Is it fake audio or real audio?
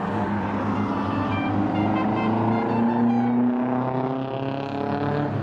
real